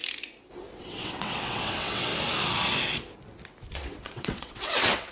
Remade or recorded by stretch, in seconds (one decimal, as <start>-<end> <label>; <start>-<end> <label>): 0.0-0.8 recorded; 0.8-2.1 remade; 2.1-3.7 recorded; 3.7-5.1 remade